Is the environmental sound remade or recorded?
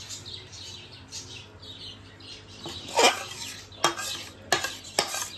recorded